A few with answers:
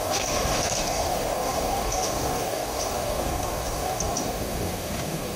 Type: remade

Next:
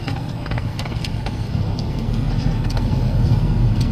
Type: remade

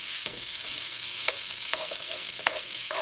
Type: remade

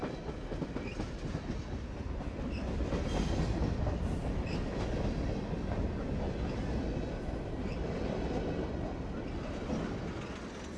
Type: recorded